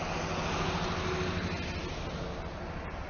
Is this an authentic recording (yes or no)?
yes